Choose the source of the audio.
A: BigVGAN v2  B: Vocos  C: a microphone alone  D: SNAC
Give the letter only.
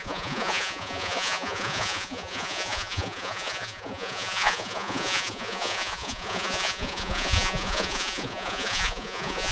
B